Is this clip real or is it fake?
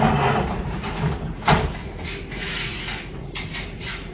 real